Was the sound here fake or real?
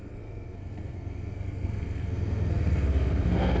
fake